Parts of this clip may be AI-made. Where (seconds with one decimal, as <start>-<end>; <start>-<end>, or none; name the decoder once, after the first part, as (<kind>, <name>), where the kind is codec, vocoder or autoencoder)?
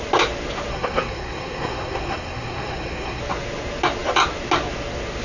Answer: 0.7-3.2 (codec, SNAC)